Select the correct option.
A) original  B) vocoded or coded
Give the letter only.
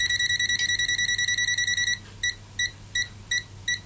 A